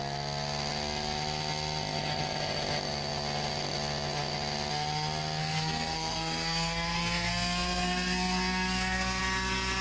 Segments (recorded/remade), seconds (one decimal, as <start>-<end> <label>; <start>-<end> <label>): 0.0-5.4 recorded; 5.4-9.2 remade; 9.2-9.8 recorded